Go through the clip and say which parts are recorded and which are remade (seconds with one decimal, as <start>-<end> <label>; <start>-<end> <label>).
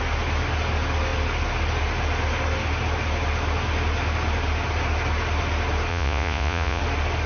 0.0-5.9 recorded; 5.9-6.8 remade; 6.8-7.3 recorded